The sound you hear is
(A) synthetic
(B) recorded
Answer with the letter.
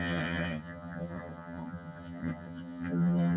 A